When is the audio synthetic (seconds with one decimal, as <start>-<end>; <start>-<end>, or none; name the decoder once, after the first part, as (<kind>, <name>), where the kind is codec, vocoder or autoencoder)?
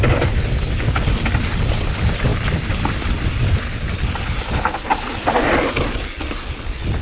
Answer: none